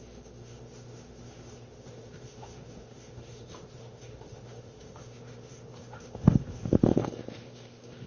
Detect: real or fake fake